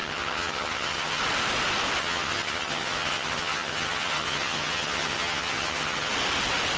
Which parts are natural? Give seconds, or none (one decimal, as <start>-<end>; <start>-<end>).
1.2-2.0; 6.1-6.8

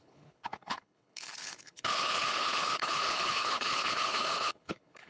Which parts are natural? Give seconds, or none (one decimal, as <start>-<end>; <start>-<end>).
none